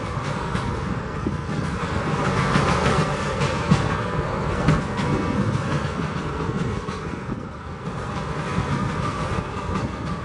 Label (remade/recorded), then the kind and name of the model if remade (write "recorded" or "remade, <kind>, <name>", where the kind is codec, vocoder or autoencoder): remade, codec, SNAC